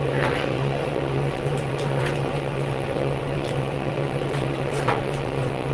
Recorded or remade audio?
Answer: remade